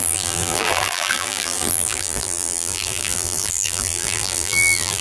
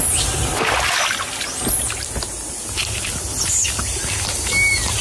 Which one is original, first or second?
second